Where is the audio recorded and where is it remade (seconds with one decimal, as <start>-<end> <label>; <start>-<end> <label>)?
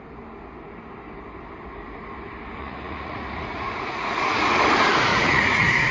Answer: 0.0-2.6 recorded; 2.6-4.4 remade; 4.4-5.1 recorded; 5.1-5.9 remade